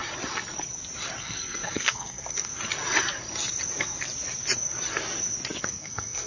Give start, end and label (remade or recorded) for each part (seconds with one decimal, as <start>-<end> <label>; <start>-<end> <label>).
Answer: 0.0-1.2 recorded; 1.2-2.5 remade; 2.5-5.6 recorded; 5.6-6.3 remade